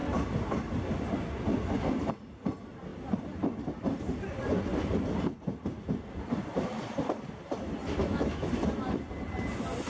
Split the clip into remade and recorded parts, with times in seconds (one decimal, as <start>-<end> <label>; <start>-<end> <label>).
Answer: 0.0-8.0 recorded; 8.0-8.5 remade; 8.5-9.9 recorded